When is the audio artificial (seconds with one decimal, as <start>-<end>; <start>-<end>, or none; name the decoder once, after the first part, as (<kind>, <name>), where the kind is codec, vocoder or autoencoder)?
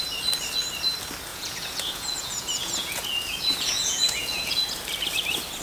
1.3-4.7 (vocoder, Vocos)